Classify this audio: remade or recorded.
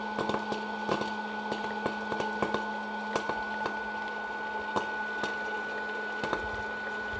recorded